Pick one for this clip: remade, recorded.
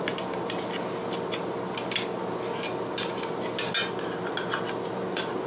recorded